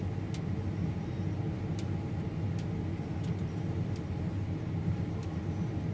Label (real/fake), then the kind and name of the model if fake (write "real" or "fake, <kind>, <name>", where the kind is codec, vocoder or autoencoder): real